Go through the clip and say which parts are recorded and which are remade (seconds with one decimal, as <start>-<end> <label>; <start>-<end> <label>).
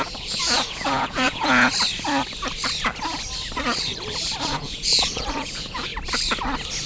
0.0-1.7 remade; 1.7-4.4 recorded; 4.4-5.9 remade; 5.9-6.9 recorded